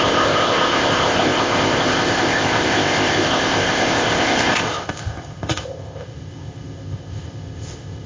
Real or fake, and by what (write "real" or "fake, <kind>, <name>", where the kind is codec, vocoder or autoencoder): fake, codec, ZipCodec